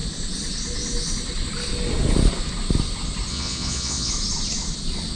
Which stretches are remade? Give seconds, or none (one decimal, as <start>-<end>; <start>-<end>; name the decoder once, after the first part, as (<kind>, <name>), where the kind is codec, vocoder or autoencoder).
3.3-4.1 (vocoder, Vocos)